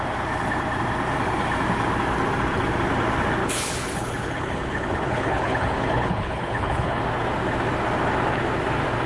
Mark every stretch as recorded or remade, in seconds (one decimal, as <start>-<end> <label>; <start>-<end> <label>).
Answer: 0.0-3.4 recorded; 3.4-7.0 remade; 7.0-9.1 recorded